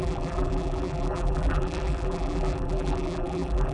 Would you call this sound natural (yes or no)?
no